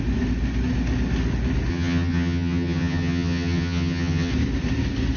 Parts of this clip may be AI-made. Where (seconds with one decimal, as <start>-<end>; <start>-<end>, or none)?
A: 1.7-4.3